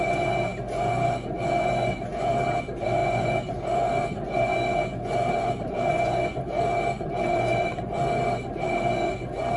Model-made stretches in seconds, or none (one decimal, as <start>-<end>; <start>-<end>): 0.0-9.6